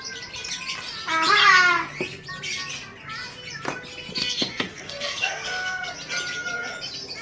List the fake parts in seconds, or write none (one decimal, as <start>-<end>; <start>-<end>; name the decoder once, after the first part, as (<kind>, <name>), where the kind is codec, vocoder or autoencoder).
4.2-5.9 (codec, SNAC)